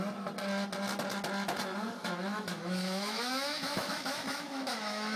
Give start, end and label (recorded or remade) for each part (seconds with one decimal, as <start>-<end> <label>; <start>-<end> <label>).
0.0-2.0 recorded; 2.0-5.2 remade